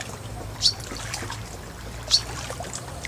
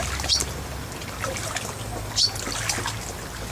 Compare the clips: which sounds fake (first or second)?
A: first